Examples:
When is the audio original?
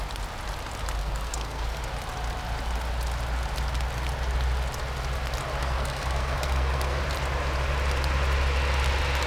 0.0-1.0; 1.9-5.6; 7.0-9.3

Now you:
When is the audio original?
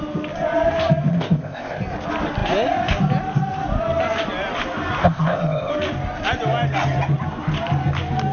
0.0-1.1; 1.8-5.0; 5.7-8.3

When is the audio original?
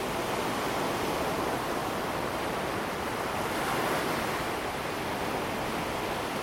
0.0-1.8; 2.9-6.4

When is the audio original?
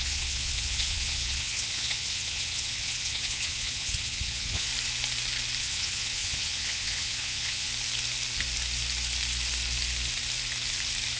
4.7-5.6; 7.7-11.2